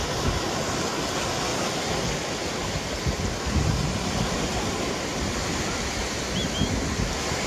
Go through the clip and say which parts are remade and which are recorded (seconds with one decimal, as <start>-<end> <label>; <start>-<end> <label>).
0.0-7.5 recorded